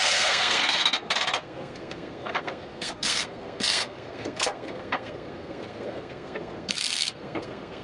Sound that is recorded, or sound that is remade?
remade